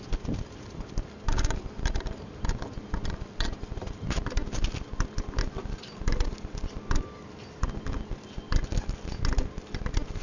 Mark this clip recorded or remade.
recorded